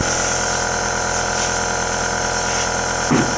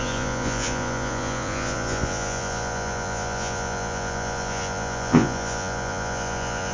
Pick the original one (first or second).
first